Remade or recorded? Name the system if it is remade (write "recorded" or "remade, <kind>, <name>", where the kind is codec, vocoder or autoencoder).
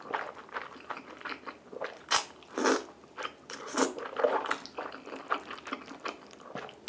recorded